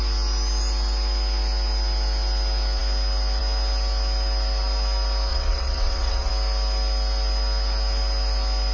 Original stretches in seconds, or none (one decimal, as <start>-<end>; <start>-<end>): 0.0-5.3; 6.3-8.7